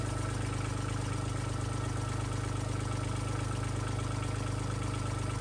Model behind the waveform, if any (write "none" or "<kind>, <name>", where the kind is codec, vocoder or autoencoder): none